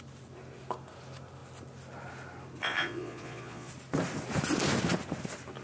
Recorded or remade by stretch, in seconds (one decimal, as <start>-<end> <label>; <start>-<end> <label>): 0.0-2.6 recorded; 2.6-3.7 remade; 3.7-5.6 recorded